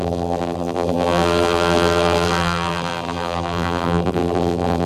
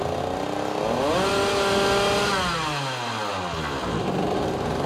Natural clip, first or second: second